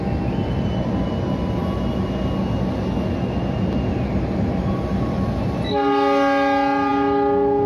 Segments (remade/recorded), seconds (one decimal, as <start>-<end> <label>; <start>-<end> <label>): 0.0-7.7 recorded